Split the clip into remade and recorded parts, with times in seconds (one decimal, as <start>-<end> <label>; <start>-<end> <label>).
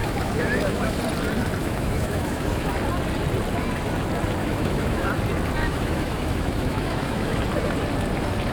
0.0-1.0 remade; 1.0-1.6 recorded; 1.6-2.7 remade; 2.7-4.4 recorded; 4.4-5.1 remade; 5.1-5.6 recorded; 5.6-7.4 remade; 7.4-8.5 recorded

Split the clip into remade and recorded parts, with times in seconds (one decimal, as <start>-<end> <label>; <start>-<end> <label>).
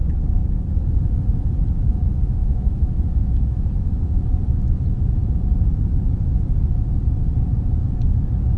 0.0-2.4 recorded; 2.4-3.9 remade; 3.9-8.6 recorded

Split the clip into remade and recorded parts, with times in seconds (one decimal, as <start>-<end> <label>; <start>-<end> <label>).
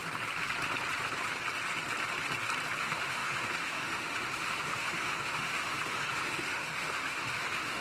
0.0-2.8 recorded; 2.8-7.8 remade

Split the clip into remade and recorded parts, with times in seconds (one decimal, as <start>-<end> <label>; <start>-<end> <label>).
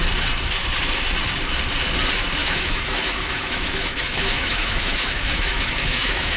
0.0-2.4 recorded; 2.4-6.4 remade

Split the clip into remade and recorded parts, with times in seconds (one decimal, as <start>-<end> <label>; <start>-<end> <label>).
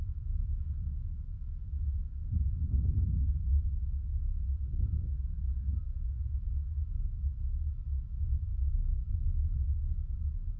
0.0-2.7 remade; 2.7-4.1 recorded; 4.1-9.1 remade; 9.1-10.6 recorded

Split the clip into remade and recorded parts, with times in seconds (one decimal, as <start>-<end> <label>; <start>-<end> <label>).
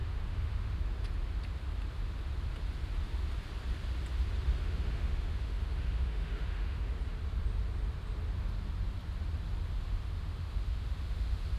0.0-0.8 remade; 0.8-4.6 recorded; 4.6-7.0 remade; 7.0-9.8 recorded; 9.8-11.6 remade